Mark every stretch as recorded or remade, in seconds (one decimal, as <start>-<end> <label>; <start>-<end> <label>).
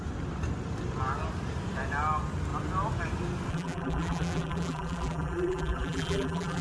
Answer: 0.0-3.5 recorded; 3.5-6.6 remade